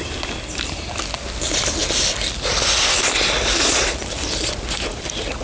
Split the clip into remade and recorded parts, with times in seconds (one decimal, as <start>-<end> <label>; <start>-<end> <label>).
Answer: 0.0-5.4 recorded